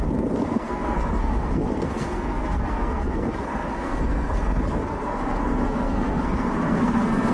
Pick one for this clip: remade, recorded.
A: remade